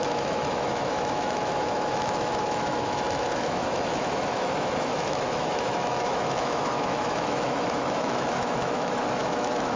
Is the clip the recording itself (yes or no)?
no